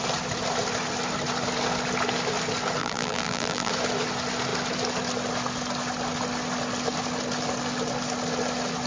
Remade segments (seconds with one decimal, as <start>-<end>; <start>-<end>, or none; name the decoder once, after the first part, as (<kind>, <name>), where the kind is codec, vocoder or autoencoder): 2.8-3.7 (vocoder, BigVGAN v2)